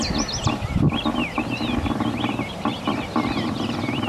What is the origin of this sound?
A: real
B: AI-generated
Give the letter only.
B